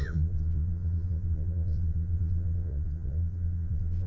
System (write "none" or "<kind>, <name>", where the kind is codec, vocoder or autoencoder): vocoder, Vocos